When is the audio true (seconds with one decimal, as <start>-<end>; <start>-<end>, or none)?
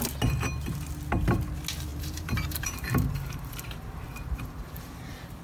0.0-1.9